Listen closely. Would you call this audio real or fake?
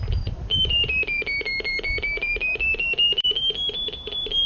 fake